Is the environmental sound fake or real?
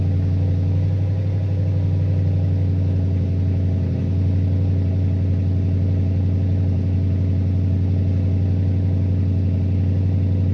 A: real